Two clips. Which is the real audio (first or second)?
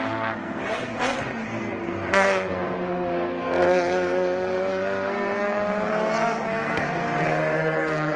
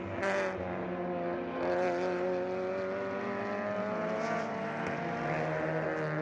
second